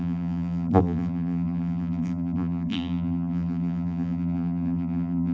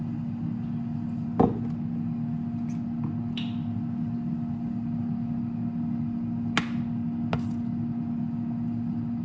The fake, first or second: first